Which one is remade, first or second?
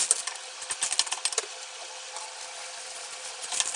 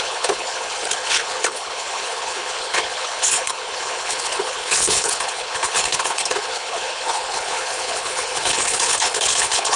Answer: second